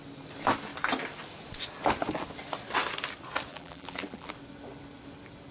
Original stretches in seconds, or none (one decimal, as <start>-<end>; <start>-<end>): 0.0-3.5; 4.3-5.5

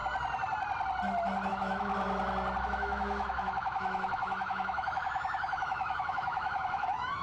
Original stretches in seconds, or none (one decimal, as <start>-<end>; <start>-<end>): 0.0-1.5; 1.9-2.6

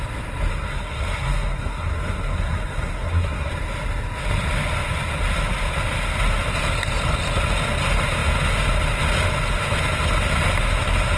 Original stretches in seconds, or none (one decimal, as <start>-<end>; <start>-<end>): 0.0-0.5; 3.5-11.2